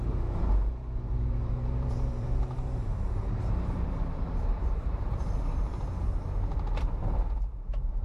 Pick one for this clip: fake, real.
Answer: fake